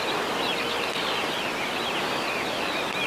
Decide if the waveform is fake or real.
real